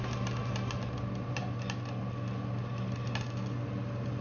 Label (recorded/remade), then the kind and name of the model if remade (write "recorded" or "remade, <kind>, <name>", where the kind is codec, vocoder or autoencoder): recorded